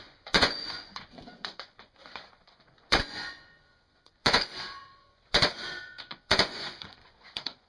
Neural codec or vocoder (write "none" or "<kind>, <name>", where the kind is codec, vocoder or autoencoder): vocoder, Vocos